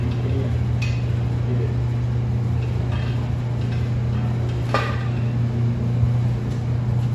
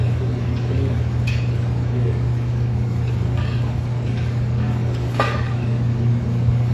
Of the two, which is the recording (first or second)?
first